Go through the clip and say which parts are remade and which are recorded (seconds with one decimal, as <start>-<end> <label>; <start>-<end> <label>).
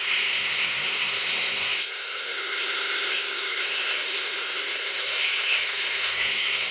0.0-6.7 remade